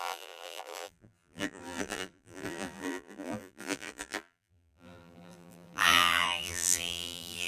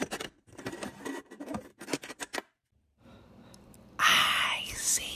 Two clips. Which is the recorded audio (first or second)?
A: second